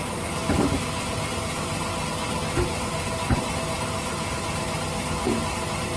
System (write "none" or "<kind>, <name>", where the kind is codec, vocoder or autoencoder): none